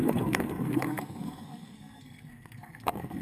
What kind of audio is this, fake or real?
fake